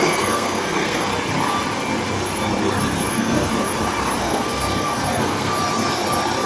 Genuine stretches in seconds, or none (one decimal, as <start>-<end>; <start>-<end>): 1.1-3.1; 3.5-4.2; 5.5-6.5